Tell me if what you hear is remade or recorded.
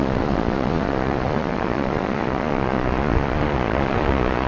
remade